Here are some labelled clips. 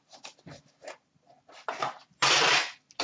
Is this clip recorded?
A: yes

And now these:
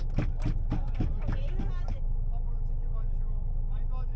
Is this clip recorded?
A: yes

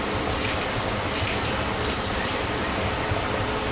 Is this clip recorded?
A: no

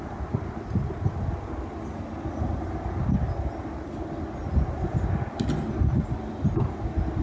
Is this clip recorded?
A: yes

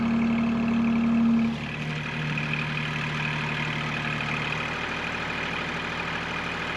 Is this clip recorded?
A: yes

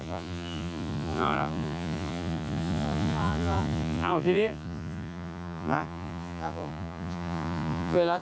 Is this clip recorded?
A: no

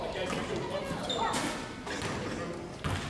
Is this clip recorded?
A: yes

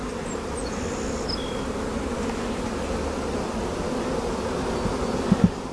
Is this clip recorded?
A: yes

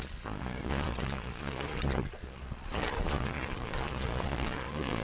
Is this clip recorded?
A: no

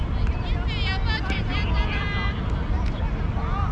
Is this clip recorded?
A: yes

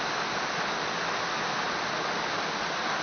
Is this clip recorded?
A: yes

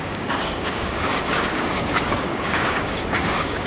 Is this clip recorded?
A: no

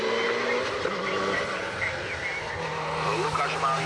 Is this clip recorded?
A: yes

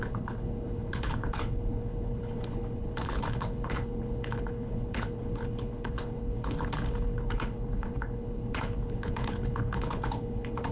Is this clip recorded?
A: no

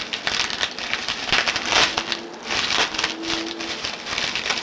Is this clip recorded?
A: yes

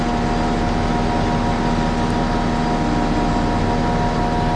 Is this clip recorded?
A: yes